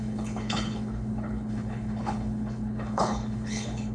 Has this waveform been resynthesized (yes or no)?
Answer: yes